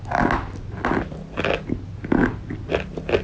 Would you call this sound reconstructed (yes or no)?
no